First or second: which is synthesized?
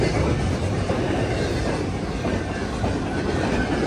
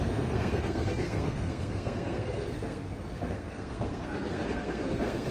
second